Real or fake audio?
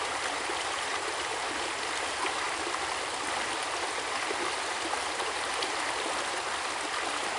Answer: real